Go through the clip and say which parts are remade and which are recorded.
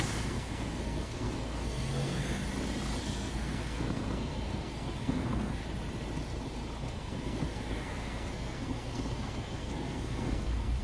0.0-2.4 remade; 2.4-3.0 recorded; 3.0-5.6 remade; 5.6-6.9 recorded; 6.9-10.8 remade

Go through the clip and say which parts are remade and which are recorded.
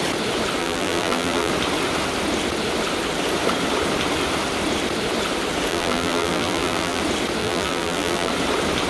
0.0-0.6 recorded; 0.6-1.5 remade; 1.5-5.7 recorded; 5.7-7.0 remade; 7.0-7.4 recorded; 7.4-8.3 remade; 8.3-8.9 recorded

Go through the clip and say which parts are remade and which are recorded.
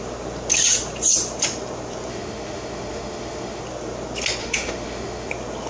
0.0-2.1 recorded; 2.1-3.6 remade; 3.6-4.4 recorded; 4.4-5.3 remade; 5.3-5.7 recorded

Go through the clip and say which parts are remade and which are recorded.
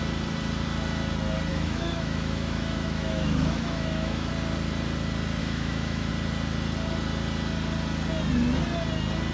0.0-1.5 recorded; 1.5-4.3 remade; 4.3-5.4 recorded; 5.4-6.1 remade; 6.1-9.3 recorded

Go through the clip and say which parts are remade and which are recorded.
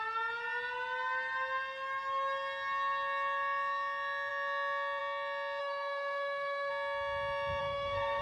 0.0-5.6 recorded; 5.6-6.7 remade; 6.7-7.6 recorded; 7.6-8.2 remade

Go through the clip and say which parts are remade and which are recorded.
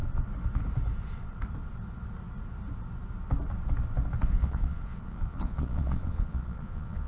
0.0-4.3 recorded; 4.3-7.1 remade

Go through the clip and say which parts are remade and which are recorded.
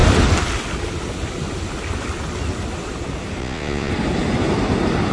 0.0-3.4 recorded; 3.4-3.9 remade; 3.9-5.1 recorded